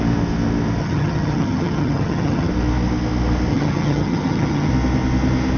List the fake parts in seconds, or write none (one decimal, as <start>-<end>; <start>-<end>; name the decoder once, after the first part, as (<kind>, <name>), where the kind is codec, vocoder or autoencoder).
0.8-2.5 (vocoder, HiFi-GAN); 3.5-4.7